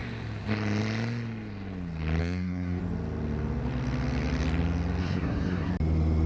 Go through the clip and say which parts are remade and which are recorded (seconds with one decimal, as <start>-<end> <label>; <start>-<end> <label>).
0.0-2.2 recorded; 2.2-2.8 remade; 2.8-5.0 recorded; 5.0-5.7 remade; 5.7-6.3 recorded